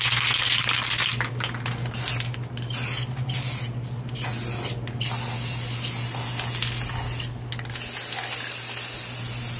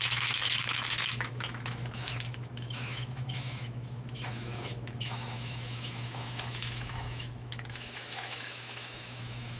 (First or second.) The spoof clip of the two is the second